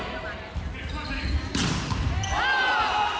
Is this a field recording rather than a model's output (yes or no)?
no